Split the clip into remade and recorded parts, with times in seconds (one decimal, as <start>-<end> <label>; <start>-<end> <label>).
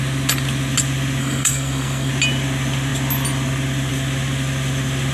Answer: 0.0-1.2 recorded; 1.2-2.1 remade; 2.1-5.1 recorded